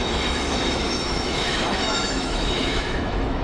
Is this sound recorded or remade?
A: remade